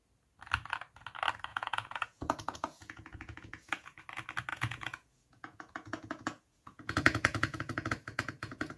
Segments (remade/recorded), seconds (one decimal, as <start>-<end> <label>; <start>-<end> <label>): 0.0-1.5 recorded; 1.5-4.0 remade; 4.0-4.5 recorded; 4.5-8.8 remade